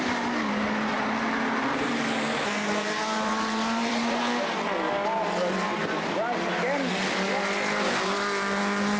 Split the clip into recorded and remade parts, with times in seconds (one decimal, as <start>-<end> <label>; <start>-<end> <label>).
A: 0.0-0.9 recorded; 0.9-4.2 remade; 4.2-9.0 recorded